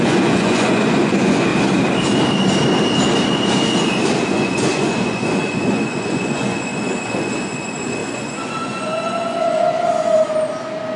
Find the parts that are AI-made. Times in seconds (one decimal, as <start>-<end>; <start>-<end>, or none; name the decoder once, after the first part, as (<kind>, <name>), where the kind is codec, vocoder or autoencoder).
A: 0.0-1.5 (vocoder, Vocos); 4.3-9.6